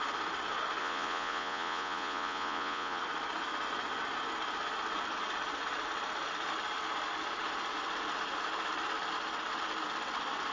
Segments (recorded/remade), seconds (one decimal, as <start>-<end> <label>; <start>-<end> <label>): 0.0-0.8 recorded; 0.8-3.0 remade; 3.0-10.5 recorded